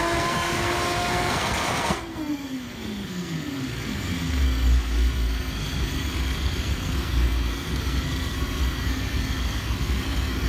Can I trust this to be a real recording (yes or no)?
no